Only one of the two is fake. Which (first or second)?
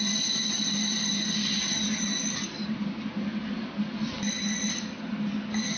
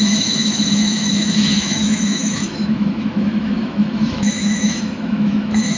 second